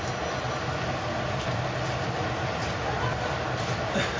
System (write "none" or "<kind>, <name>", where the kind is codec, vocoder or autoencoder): none